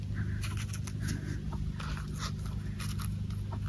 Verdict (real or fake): real